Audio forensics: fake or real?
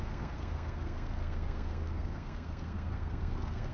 fake